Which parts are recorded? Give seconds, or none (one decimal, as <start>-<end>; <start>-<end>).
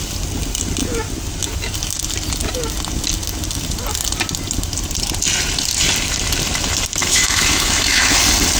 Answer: 0.0-7.0; 8.2-8.6